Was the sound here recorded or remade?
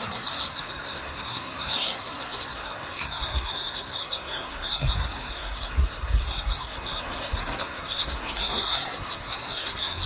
remade